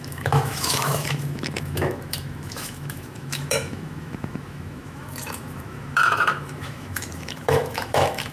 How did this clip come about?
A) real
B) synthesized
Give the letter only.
B